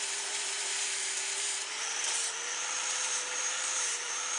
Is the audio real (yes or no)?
no